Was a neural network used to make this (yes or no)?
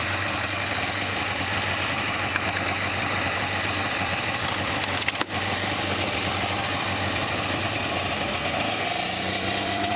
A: yes